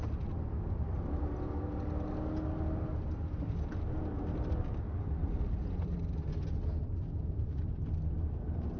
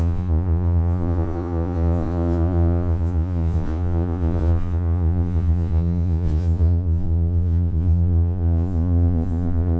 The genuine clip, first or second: first